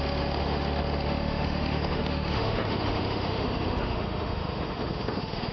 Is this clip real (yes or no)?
no